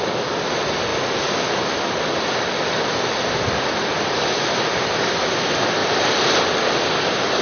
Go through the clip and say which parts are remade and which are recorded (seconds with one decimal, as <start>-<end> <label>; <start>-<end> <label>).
0.0-5.8 recorded; 5.8-6.4 remade; 6.4-7.4 recorded